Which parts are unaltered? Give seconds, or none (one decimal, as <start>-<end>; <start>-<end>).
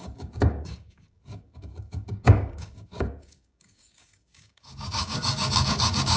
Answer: none